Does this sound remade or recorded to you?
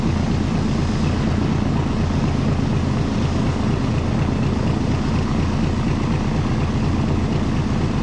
recorded